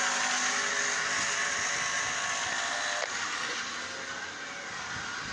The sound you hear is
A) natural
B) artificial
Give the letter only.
A